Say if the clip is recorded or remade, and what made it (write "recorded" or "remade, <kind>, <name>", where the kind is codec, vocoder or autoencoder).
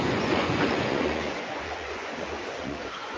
remade, vocoder, Vocos